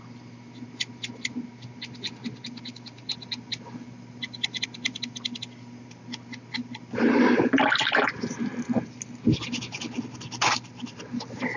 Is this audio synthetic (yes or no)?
no